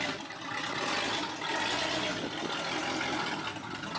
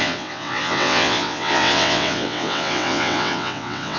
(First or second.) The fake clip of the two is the second